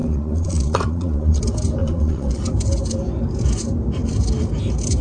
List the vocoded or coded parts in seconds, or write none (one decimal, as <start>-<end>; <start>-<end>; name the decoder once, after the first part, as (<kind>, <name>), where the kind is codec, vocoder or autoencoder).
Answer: 0.0-1.4 (vocoder, Vocos); 1.8-2.4